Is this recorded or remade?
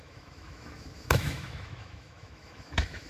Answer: remade